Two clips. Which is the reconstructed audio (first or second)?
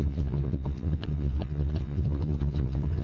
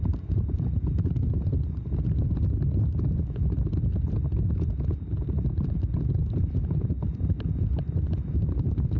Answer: first